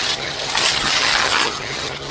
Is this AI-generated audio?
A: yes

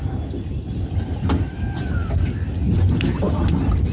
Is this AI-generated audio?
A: no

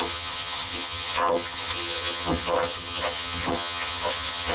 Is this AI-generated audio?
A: yes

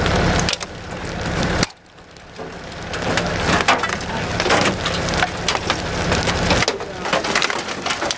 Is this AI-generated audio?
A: no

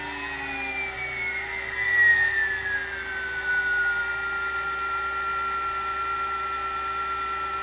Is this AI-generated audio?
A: no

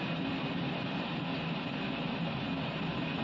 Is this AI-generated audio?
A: no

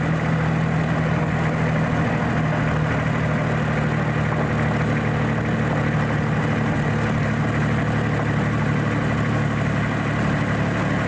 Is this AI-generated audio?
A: no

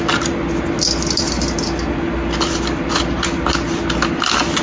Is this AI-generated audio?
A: no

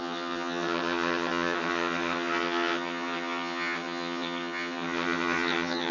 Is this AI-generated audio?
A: yes